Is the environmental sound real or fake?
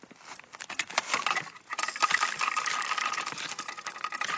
real